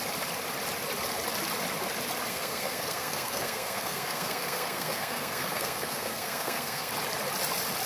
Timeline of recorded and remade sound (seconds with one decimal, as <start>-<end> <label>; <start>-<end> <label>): 0.0-2.3 recorded; 2.3-6.9 remade; 6.9-7.9 recorded